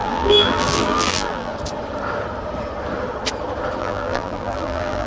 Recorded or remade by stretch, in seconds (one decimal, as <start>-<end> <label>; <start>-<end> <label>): 0.0-1.5 remade; 1.5-3.8 recorded; 3.8-5.1 remade